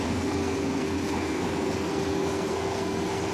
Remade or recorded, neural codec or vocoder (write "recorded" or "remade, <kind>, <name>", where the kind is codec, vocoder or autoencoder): remade, codec, SNAC